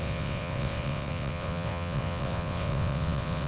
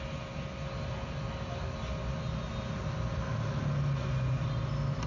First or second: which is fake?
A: first